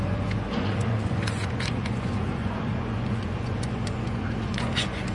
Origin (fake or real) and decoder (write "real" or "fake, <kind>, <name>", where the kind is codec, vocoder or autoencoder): fake, vocoder, Vocos